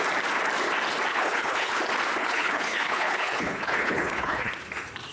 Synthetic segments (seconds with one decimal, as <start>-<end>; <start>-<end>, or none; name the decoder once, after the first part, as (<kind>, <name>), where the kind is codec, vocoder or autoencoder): 1.1-1.7 (codec, HILCodec); 2.2-4.5